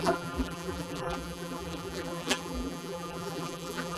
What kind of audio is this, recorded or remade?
remade